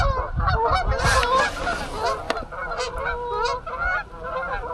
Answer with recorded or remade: recorded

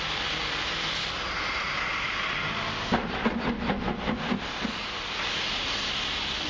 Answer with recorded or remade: recorded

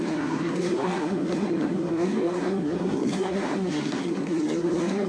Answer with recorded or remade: remade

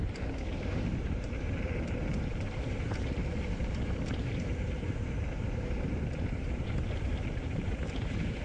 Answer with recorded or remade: remade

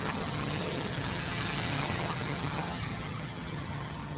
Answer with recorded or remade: remade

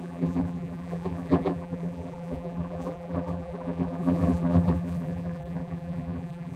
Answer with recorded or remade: remade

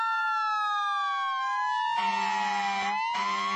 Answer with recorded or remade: recorded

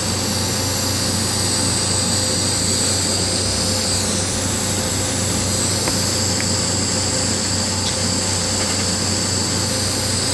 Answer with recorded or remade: recorded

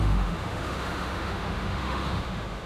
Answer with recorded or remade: remade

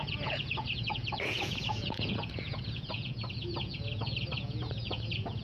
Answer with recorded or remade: remade